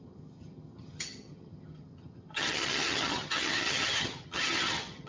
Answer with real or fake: fake